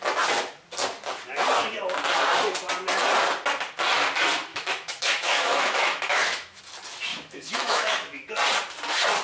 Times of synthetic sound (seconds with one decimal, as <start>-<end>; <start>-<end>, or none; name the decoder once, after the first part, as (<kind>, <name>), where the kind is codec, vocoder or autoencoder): 4.5-6.6 (autoencoder, DAC-VAE); 7.1-8.3